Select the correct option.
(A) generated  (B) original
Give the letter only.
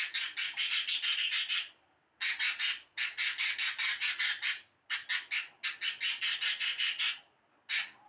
B